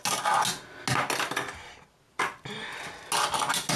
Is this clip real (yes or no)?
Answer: yes